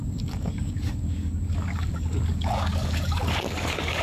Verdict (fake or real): fake